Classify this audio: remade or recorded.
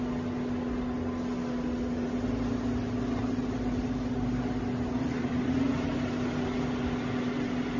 recorded